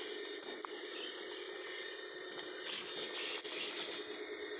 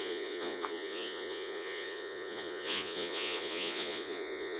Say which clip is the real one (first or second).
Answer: first